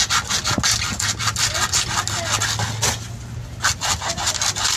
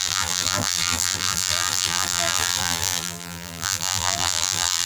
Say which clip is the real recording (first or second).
first